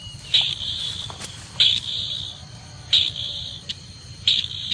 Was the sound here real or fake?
real